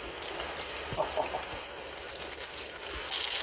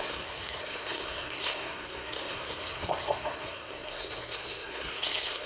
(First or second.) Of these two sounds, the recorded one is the first